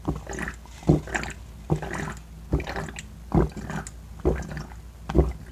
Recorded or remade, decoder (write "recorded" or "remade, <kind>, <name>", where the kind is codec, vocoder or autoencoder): recorded